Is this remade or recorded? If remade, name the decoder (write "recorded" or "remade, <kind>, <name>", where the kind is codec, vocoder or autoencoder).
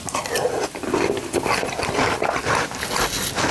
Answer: recorded